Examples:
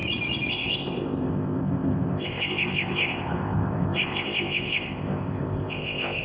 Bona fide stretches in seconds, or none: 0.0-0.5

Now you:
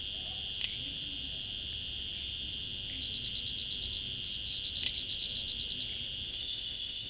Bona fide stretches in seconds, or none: 0.0-6.3

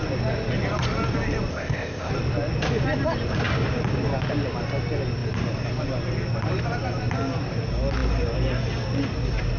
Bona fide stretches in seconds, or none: 0.0-1.5; 2.1-9.6

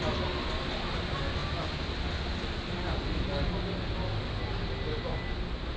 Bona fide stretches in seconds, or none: 0.0-5.8

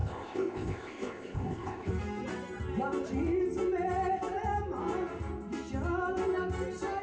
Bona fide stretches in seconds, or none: 1.9-7.0

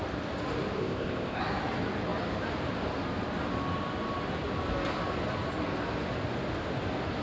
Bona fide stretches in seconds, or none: 0.0-0.8; 1.4-7.2

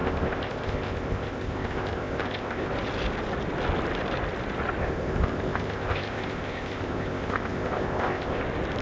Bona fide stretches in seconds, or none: 2.7-4.8; 8.4-8.8